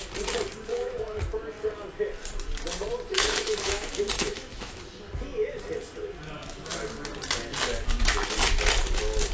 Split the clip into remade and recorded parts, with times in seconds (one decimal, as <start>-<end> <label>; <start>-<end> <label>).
0.0-0.7 recorded; 0.7-1.2 remade; 1.2-3.1 recorded; 3.1-4.8 remade; 4.8-9.3 recorded